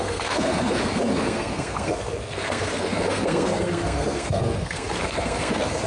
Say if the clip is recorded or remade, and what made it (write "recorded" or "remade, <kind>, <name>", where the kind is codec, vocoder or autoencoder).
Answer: remade, codec, SNAC